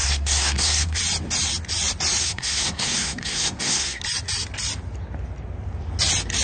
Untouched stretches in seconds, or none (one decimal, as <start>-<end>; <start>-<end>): 1.0-2.2; 4.0-6.4